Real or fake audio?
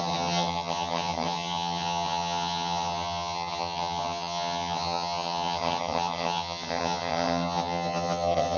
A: fake